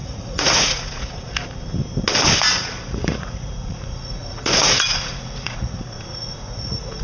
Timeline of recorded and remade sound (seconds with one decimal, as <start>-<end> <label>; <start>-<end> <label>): 0.0-1.4 remade; 1.4-2.5 recorded; 2.5-7.0 remade